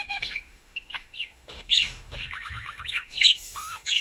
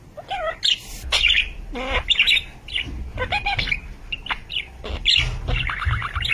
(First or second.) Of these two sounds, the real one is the second